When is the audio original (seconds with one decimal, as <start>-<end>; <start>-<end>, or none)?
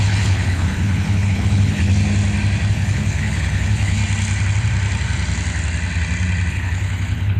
1.9-2.7; 4.0-6.5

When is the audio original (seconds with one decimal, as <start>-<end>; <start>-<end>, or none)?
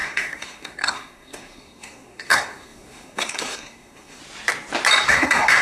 4.2-5.1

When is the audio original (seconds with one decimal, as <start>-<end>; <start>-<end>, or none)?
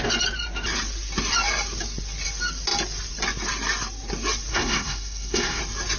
0.0-4.5; 5.6-6.0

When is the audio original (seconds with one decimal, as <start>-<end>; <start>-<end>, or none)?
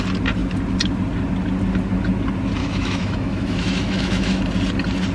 0.0-2.6; 4.4-5.1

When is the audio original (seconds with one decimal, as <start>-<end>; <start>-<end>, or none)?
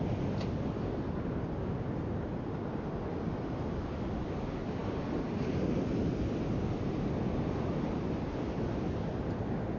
0.0-9.8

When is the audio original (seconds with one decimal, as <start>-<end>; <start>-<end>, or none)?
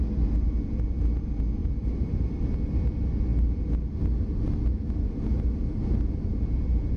0.0-1.6; 2.4-7.0